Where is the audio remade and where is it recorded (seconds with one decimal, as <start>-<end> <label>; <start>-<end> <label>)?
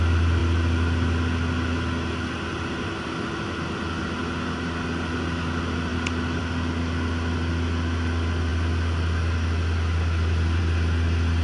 0.0-11.4 recorded